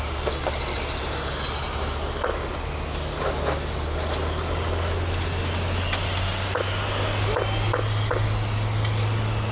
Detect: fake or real real